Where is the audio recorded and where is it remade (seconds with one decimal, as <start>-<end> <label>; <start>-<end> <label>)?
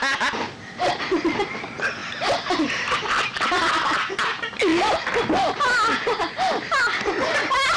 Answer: 0.0-7.8 recorded